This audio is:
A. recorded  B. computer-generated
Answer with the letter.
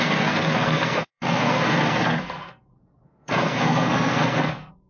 B